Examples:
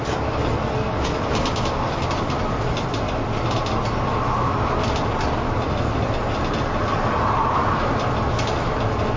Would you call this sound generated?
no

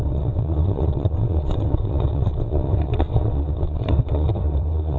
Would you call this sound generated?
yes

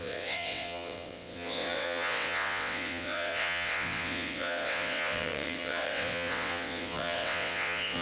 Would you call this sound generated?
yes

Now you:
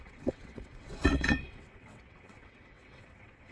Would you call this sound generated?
yes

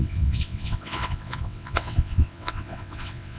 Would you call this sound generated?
yes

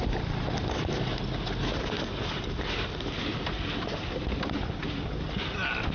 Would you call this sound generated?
no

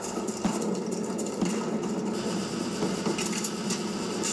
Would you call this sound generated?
no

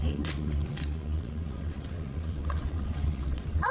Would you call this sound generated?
yes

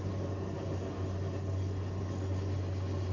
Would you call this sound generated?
no